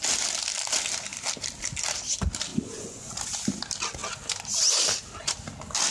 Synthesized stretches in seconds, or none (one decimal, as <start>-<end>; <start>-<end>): 2.5-3.2